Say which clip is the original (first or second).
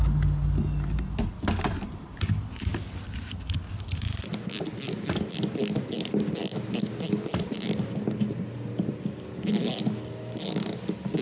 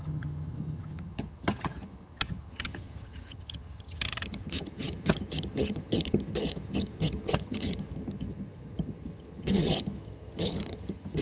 first